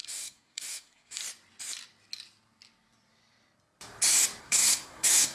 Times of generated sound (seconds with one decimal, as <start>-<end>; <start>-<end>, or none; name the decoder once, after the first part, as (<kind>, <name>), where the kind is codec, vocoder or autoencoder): 0.0-1.2 (codec, SNAC); 4.4-5.3